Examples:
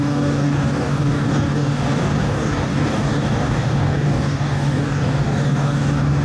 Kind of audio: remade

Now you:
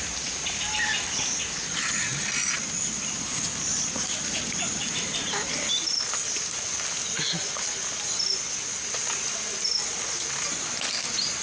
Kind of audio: recorded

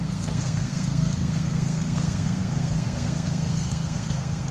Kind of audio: remade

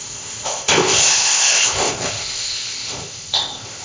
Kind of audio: remade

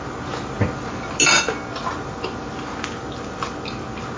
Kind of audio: recorded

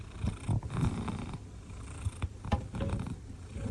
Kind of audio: remade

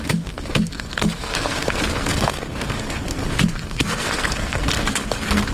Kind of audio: remade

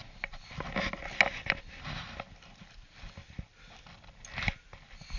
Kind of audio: recorded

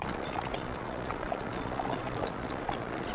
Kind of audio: remade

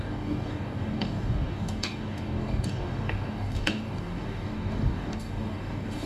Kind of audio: remade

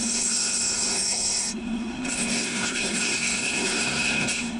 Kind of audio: remade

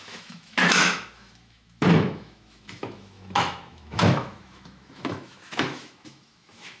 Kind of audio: remade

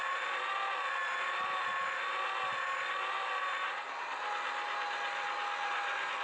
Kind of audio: recorded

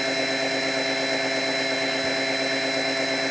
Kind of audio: recorded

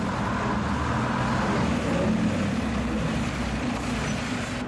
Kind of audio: recorded